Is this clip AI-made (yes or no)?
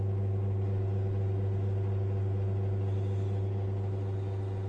no